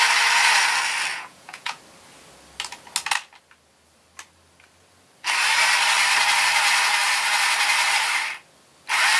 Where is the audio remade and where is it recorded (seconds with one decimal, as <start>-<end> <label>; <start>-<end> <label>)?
0.0-1.1 recorded; 1.1-1.8 remade; 1.8-9.2 recorded